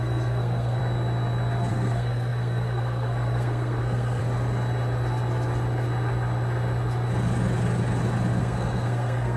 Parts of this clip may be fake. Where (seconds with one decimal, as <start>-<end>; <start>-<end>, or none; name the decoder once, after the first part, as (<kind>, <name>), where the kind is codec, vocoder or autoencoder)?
0.0-0.8 (codec, SNAC); 1.7-4.2; 8.4-9.4